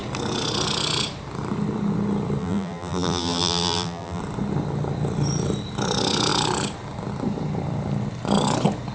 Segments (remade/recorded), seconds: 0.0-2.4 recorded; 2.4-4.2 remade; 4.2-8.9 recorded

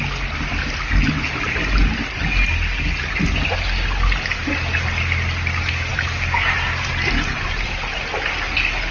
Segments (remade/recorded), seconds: 0.0-5.9 recorded; 5.9-6.9 remade; 6.9-8.9 recorded

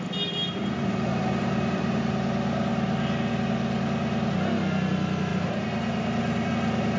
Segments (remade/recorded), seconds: 0.0-1.1 recorded; 1.1-2.1 remade; 2.1-5.3 recorded; 5.3-6.5 remade; 6.5-7.0 recorded

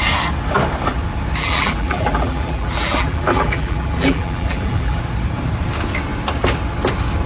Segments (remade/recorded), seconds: 0.0-1.4 recorded; 1.4-5.0 remade; 5.0-7.3 recorded

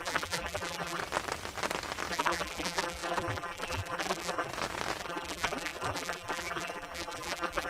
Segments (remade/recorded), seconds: 0.0-1.0 remade; 1.0-2.1 recorded; 2.1-4.5 remade; 4.5-5.0 recorded; 5.0-7.7 remade